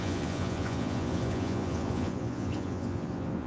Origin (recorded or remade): remade